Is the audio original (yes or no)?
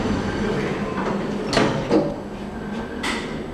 yes